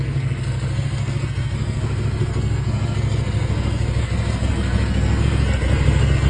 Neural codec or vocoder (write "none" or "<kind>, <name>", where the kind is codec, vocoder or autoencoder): codec, SNAC